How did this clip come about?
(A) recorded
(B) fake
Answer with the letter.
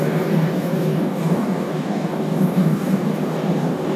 B